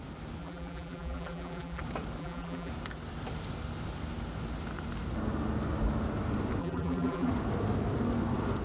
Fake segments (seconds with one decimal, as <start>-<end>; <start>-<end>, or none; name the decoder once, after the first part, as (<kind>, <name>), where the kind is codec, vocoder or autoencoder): 0.4-1.8 (vocoder, BigVGAN v2); 2.2-2.7; 6.6-7.3